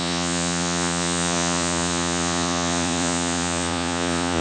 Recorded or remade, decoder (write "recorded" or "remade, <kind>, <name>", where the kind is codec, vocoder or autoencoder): remade, vocoder, Vocos